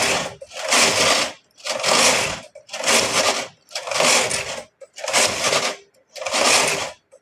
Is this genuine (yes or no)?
yes